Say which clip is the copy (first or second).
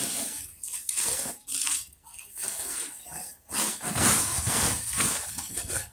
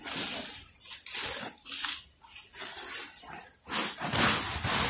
first